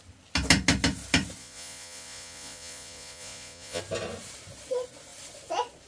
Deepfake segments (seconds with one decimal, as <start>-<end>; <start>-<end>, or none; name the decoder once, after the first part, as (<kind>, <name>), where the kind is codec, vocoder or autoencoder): 1.4-3.8 (vocoder, Vocos)